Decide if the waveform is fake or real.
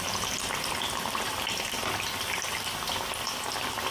real